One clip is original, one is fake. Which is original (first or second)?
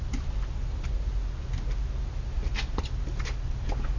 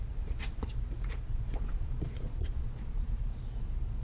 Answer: first